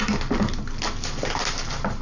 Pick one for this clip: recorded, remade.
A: recorded